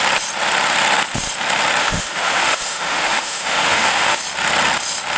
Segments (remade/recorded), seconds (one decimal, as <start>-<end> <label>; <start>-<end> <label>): 0.0-1.8 recorded; 1.8-4.2 remade; 4.2-5.2 recorded